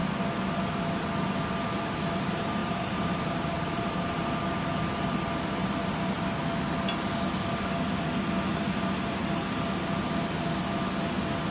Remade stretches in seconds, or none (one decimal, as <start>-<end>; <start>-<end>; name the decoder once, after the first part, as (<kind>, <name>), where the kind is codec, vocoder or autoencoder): 2.6-4.4 (vocoder, BigVGAN v2)

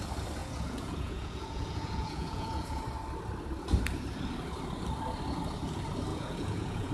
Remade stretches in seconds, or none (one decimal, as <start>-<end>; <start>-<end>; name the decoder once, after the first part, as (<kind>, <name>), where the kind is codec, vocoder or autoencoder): 0.4-2.8 (vocoder, Vocos); 6.1-6.9

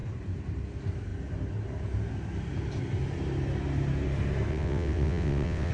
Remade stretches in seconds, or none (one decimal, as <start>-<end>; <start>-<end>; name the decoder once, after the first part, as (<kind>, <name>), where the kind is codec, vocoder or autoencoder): 4.5-5.7 (vocoder, WaveNeXt)